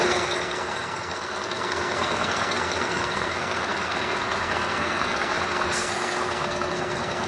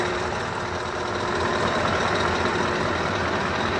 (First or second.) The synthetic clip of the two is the first